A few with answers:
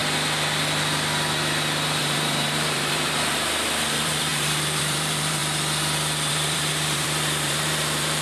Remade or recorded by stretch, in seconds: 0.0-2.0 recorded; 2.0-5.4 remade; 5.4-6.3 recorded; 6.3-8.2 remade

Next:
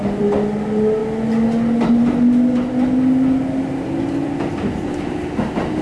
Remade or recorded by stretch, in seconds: 0.0-5.8 recorded

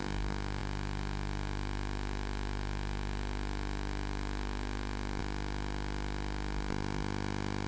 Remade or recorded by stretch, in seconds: 0.0-7.7 recorded

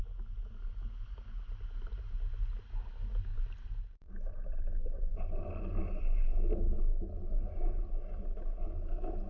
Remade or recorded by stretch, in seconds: 0.0-3.3 recorded; 3.3-4.6 remade; 4.6-5.1 recorded; 5.1-5.8 remade; 5.8-9.3 recorded